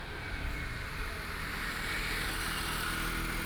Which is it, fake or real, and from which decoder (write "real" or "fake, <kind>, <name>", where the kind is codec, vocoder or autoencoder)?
real